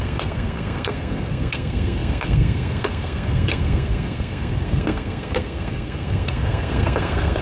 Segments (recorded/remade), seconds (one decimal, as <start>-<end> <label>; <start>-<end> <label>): 0.0-7.4 remade